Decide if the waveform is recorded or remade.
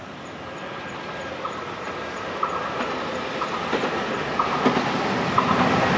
recorded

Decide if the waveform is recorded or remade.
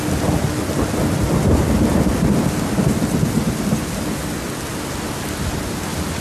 recorded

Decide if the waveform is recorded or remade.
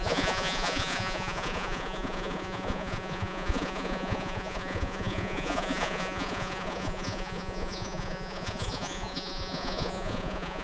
remade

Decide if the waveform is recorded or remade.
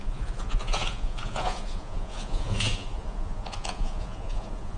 remade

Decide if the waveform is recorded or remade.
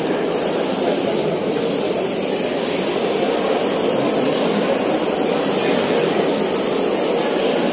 recorded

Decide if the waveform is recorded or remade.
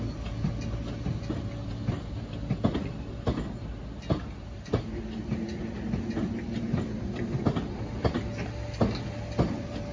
recorded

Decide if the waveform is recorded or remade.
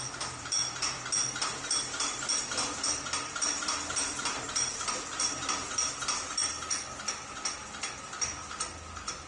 recorded